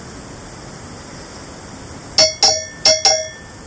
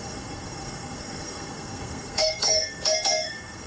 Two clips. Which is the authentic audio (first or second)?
first